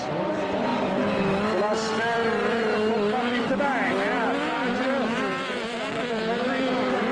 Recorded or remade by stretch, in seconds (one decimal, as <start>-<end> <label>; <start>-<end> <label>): 0.0-2.2 remade; 2.2-5.9 recorded; 5.9-7.1 remade